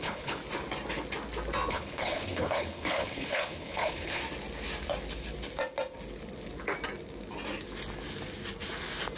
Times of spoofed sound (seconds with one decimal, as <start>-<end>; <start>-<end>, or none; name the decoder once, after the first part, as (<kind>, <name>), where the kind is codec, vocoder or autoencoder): 0.0-0.4 (codec, HILCodec); 1.7-4.2